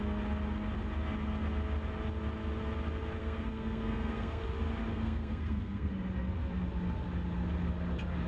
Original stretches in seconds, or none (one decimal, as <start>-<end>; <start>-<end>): 0.0-3.2; 4.4-4.9; 5.9-8.3